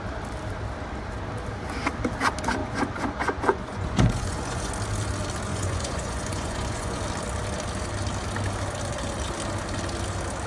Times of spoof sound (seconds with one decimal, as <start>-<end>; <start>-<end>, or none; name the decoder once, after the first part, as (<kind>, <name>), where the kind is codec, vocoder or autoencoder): 2.6-4.7 (vocoder, Vocos); 5.5-7.0